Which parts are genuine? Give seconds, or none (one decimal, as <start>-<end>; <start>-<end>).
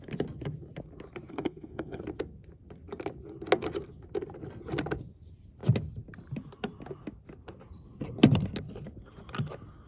0.0-1.3; 2.0-9.9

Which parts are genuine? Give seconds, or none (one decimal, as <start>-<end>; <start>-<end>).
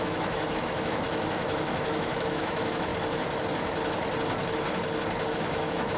2.9-5.3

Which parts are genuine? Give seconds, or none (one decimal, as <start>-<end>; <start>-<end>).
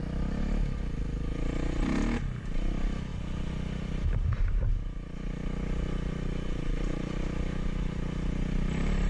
0.0-9.1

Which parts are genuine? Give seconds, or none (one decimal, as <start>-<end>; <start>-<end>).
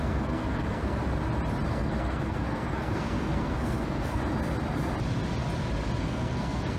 1.0-1.7; 4.2-6.0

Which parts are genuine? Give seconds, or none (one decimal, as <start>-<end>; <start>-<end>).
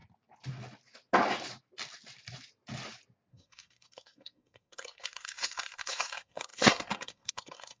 0.0-3.3